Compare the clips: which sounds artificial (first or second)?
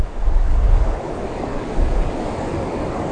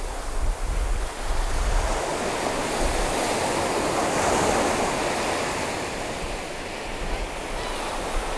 first